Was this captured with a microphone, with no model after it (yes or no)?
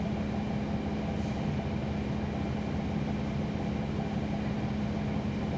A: yes